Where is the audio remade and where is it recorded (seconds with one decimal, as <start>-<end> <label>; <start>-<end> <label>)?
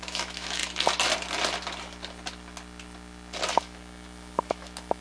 0.0-0.6 remade; 0.6-3.6 recorded; 3.6-5.0 remade